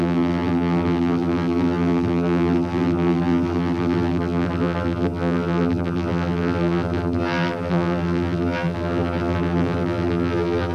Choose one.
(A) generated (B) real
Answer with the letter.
A